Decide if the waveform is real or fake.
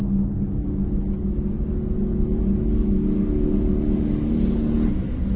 real